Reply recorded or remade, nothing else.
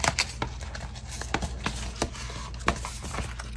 recorded